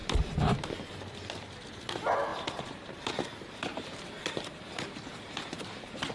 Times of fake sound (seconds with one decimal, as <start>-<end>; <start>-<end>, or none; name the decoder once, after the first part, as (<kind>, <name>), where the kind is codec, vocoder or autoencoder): 0.0-0.6 (vocoder, BigVGAN v2); 2.3-6.1